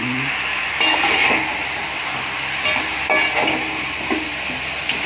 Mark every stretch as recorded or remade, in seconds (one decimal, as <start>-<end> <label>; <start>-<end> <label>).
0.0-5.1 recorded